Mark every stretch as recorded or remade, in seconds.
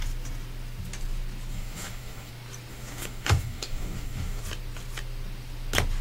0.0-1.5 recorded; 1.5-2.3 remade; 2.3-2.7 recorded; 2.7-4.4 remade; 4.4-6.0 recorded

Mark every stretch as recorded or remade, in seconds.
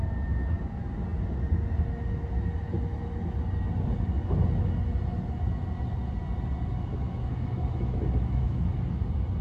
0.0-6.9 recorded; 6.9-9.0 remade; 9.0-9.4 recorded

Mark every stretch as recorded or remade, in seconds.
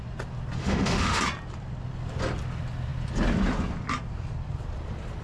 0.0-0.6 recorded; 0.6-1.2 remade; 1.2-5.2 recorded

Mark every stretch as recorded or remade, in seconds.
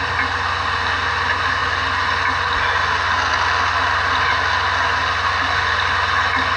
0.0-6.6 recorded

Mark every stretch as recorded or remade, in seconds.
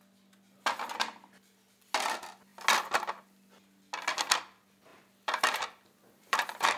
0.0-4.9 recorded; 4.9-6.8 remade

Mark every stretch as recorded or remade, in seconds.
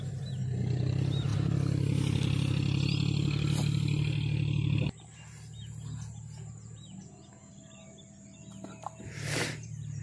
0.0-5.6 recorded; 5.6-7.5 remade; 7.5-10.0 recorded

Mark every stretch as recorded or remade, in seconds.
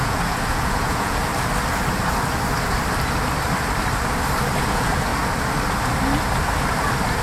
0.0-1.3 remade; 1.3-4.6 recorded; 4.6-5.1 remade; 5.1-7.2 recorded